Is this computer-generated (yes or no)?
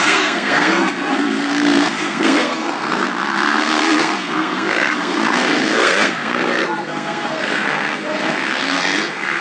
yes